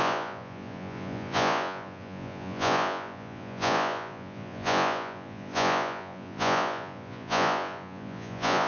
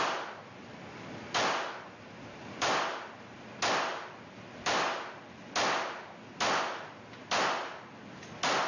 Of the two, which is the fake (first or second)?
first